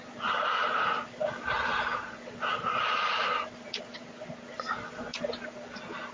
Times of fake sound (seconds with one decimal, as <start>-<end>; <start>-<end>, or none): none